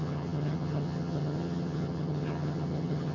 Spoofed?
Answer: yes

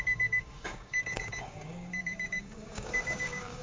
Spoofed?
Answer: yes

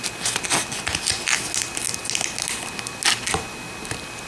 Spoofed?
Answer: no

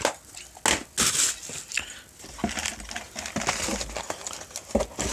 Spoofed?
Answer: no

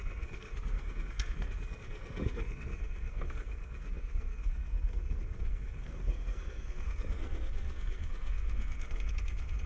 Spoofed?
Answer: yes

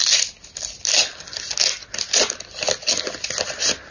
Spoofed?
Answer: no